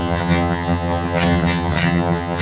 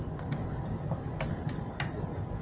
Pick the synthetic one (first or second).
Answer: first